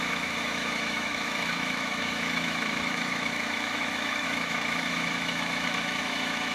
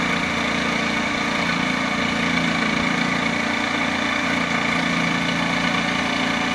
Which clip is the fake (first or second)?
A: first